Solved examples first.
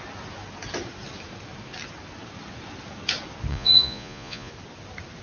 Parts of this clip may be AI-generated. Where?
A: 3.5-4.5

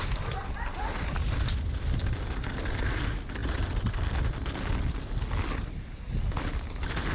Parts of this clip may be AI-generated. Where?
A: none

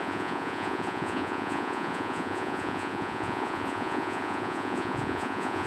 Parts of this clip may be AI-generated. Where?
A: 0.0-5.7